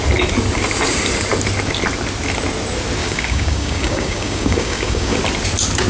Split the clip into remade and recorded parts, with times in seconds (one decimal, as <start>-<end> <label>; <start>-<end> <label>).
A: 0.0-3.0 recorded; 3.0-5.2 remade; 5.2-5.9 recorded